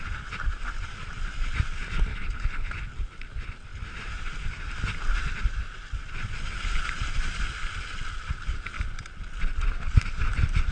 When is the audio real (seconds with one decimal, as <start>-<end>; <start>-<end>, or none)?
0.0-2.1; 2.7-10.7